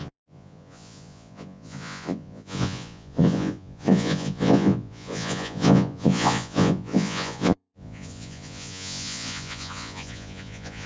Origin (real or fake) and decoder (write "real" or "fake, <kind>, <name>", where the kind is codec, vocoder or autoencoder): fake, vocoder, Vocos